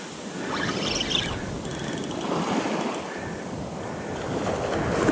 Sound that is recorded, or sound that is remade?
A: recorded